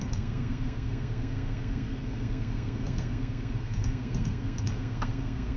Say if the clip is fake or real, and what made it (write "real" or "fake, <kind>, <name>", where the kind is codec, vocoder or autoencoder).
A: fake, codec, SNAC